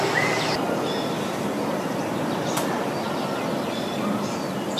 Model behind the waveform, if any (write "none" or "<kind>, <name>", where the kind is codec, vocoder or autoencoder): none